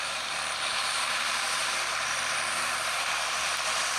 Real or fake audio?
fake